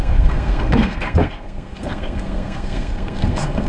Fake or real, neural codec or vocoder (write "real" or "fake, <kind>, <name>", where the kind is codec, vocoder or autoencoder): fake, codec, SNAC